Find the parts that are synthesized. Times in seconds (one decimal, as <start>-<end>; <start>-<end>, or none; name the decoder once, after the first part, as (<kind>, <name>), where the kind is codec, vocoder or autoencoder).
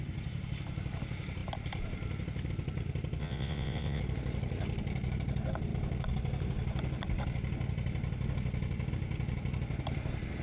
3.2-4.0 (vocoder, WaveNeXt)